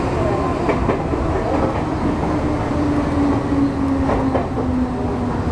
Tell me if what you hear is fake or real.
real